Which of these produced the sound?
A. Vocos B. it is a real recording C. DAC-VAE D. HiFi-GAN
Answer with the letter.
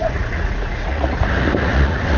A